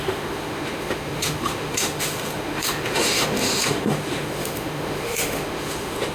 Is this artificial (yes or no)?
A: yes